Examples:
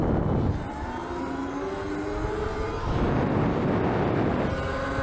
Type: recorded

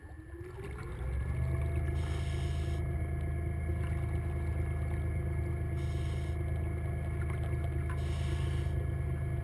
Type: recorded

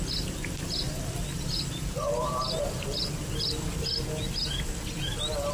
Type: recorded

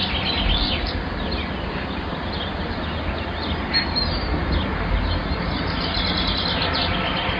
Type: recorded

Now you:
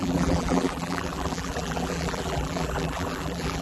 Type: remade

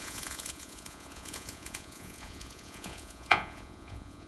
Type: remade